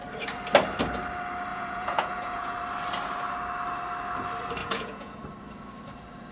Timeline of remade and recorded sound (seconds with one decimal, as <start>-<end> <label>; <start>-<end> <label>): 0.0-1.5 recorded; 1.5-2.6 remade; 2.6-4.6 recorded; 4.6-5.2 remade; 5.2-6.3 recorded